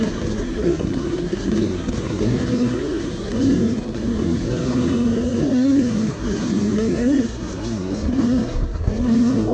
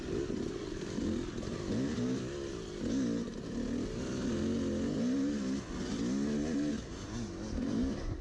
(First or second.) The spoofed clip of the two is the first